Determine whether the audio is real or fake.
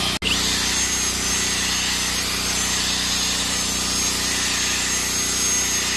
real